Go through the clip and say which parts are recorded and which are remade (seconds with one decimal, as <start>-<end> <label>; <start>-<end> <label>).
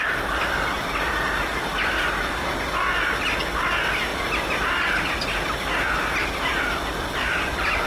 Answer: 0.0-7.9 recorded